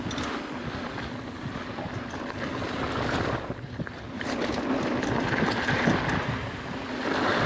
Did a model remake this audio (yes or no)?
no